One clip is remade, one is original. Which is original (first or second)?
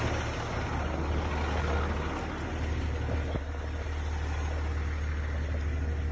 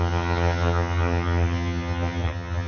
first